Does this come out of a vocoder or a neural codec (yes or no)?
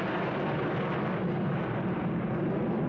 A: no